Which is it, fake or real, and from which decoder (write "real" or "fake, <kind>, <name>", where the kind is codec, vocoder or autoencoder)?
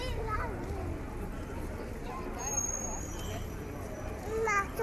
real